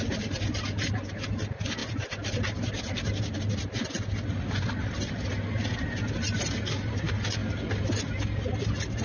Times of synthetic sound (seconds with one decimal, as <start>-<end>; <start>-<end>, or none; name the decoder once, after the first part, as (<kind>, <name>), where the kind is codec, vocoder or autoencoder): none